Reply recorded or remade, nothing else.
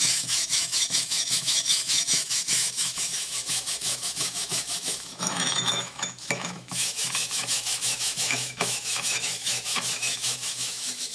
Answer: remade